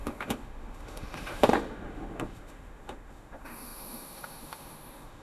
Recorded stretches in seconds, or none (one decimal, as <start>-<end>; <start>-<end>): none